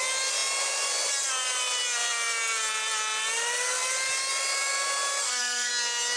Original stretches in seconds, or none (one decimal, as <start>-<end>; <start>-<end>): 0.0-5.2; 5.7-6.2